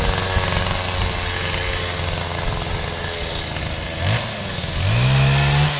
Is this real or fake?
real